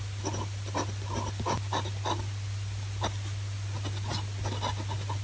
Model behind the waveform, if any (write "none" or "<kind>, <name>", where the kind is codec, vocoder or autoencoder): none